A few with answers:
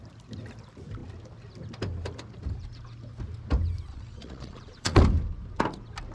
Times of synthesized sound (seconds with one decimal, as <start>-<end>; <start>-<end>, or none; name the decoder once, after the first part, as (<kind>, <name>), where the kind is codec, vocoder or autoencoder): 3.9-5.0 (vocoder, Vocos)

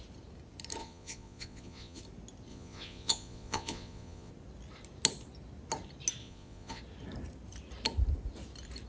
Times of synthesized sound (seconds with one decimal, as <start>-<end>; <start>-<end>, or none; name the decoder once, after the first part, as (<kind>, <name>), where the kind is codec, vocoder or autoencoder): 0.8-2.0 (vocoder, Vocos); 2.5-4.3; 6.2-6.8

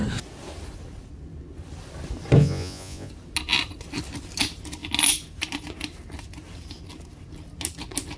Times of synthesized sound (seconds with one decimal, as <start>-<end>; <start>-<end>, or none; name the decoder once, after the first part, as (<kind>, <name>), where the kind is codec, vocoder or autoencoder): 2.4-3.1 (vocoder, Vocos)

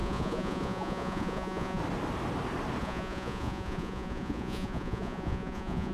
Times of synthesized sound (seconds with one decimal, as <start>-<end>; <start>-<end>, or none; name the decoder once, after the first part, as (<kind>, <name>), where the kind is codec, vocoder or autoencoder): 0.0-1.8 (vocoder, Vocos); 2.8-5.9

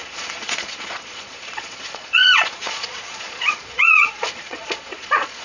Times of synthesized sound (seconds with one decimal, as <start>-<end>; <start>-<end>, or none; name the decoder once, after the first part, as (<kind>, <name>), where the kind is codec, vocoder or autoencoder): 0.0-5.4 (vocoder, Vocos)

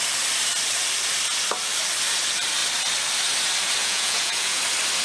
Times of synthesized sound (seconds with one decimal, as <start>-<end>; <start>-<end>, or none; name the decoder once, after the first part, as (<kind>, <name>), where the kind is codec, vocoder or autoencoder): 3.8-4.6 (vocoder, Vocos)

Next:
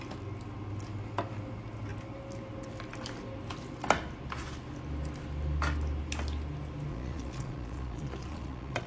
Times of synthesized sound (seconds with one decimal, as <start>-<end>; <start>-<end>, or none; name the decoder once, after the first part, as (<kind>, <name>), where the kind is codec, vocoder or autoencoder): 6.9-8.9 (vocoder, Vocos)

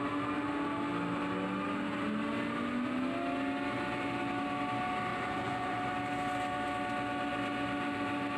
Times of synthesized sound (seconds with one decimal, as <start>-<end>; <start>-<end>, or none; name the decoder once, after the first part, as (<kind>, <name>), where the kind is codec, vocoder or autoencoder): 5.1-5.8 (vocoder, Vocos)